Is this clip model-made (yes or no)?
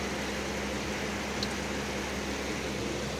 no